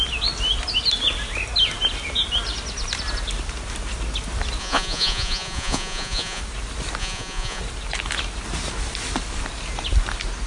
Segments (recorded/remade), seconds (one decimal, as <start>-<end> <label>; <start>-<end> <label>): 0.0-4.6 recorded; 4.6-6.4 remade; 6.4-7.0 recorded; 7.0-7.6 remade; 7.6-10.5 recorded